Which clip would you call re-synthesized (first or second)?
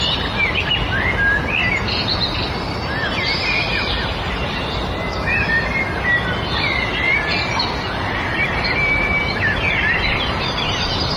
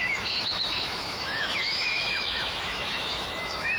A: second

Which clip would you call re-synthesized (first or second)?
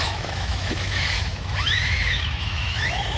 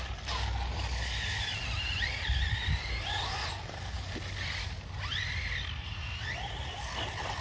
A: first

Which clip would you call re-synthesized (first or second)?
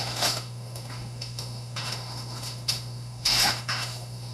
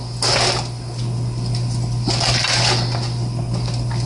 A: first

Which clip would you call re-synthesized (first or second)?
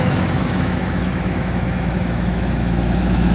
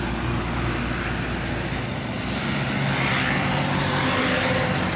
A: first